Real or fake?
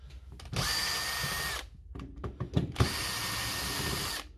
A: real